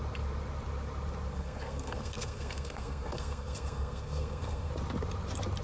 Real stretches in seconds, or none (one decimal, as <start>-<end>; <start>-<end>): 0.0-1.3; 4.7-5.6